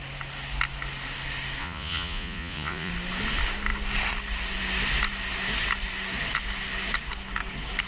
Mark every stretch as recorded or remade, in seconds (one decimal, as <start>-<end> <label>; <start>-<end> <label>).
0.0-1.6 recorded; 1.6-2.9 remade; 2.9-7.9 recorded